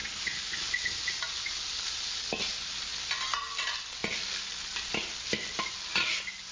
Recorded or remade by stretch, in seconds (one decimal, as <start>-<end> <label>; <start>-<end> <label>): 0.0-6.5 recorded